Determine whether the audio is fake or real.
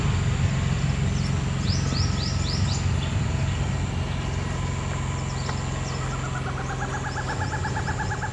real